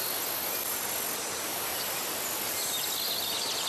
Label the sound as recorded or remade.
recorded